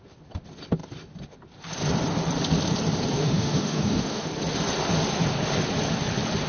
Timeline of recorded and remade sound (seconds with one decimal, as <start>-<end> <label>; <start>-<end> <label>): 0.0-3.2 recorded; 3.2-4.3 remade; 4.3-6.5 recorded

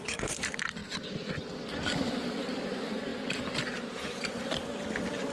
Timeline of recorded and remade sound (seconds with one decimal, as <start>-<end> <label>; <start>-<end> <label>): 0.0-0.8 remade; 0.8-1.9 recorded; 1.9-3.1 remade; 3.1-3.7 recorded; 3.7-4.4 remade; 4.4-5.3 recorded